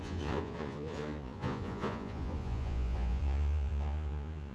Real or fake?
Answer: fake